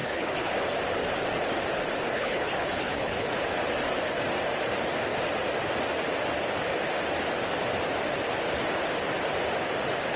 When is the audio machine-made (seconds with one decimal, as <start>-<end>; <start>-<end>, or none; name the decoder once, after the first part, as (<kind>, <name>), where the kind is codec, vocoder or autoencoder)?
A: 0.0-0.5 (codec, HILCodec); 2.1-3.3